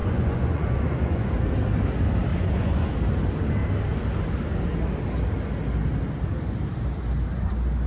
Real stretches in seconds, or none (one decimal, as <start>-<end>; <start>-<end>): 1.3-2.3; 2.9-7.9